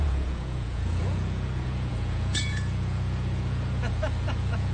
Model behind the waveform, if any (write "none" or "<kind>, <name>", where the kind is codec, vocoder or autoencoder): vocoder, Vocos